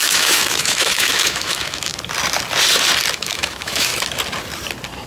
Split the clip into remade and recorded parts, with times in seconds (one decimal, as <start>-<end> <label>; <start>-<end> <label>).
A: 0.0-1.9 remade; 1.9-3.1 recorded; 3.1-3.9 remade; 3.9-5.1 recorded